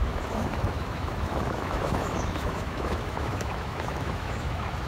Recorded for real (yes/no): no